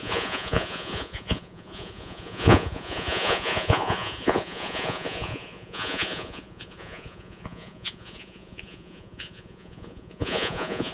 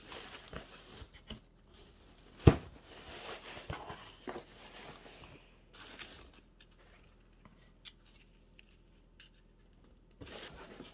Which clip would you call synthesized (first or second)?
first